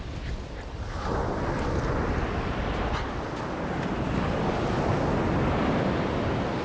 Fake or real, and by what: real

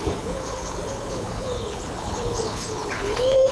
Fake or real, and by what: fake, codec, HILCodec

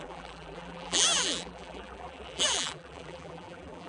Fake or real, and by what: fake, vocoder, BigVGAN v2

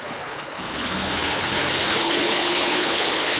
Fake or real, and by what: fake, codec, HILCodec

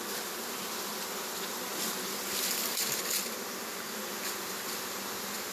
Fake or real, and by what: real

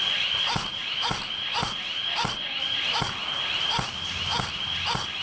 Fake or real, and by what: real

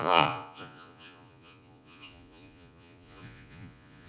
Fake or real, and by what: fake, vocoder, Vocos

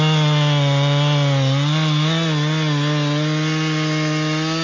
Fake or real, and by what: real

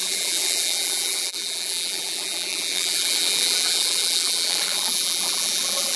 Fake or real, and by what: fake, vocoder, BigVGAN v2